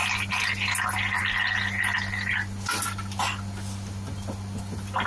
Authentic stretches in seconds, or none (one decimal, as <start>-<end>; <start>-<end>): 0.0-5.1